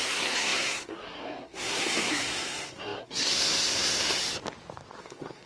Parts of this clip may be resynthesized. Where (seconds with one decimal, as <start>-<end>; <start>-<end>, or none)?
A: 0.0-4.2; 5.0-5.5